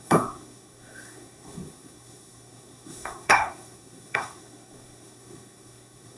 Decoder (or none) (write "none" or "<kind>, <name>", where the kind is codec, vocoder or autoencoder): codec, SNAC